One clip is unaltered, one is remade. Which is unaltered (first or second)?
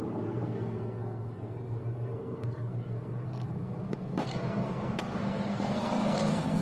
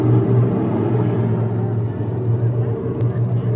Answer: second